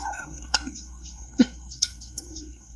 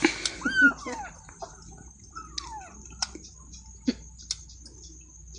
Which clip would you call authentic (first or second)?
second